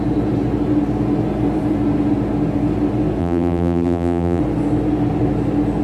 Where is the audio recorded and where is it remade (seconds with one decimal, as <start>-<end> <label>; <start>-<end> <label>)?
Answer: 0.0-3.2 recorded; 3.2-4.4 remade; 4.4-5.8 recorded